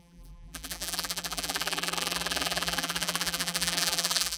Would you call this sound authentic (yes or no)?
no